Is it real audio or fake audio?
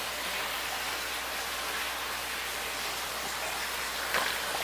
real